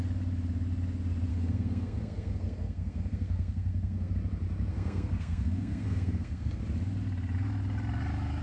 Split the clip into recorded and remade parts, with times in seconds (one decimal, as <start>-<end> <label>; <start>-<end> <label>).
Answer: 0.0-1.3 recorded; 1.3-4.1 remade; 4.1-4.7 recorded; 4.7-6.6 remade; 6.6-8.4 recorded